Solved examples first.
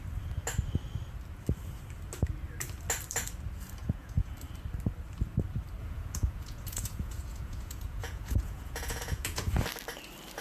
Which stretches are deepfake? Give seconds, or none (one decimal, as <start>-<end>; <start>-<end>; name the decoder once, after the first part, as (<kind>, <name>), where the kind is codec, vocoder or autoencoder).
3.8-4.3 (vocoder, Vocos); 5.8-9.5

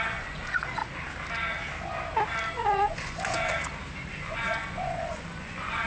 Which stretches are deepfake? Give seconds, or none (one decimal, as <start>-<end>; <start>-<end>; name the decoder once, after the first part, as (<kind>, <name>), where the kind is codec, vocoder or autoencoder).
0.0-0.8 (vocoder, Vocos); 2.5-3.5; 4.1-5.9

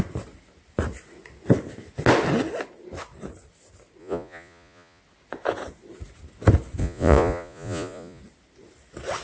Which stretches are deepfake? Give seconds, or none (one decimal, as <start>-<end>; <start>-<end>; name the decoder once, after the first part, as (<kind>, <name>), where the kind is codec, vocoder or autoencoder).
4.0-5.0 (vocoder, Vocos); 6.8-8.2

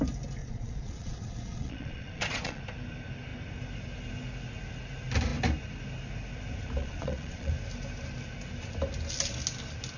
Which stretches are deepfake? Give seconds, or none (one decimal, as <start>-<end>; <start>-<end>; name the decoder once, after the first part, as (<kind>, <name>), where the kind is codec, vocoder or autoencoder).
0.4-2.6 (vocoder, Vocos); 6.8-7.5